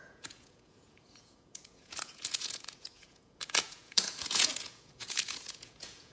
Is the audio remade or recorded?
remade